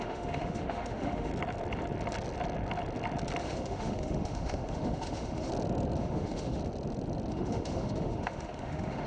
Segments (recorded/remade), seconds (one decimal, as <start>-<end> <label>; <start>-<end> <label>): 0.0-1.3 remade; 1.3-3.4 recorded; 3.4-5.5 remade; 5.5-6.0 recorded; 6.0-6.6 remade; 6.6-7.3 recorded; 7.3-9.1 remade